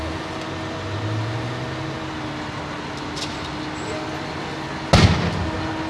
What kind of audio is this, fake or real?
real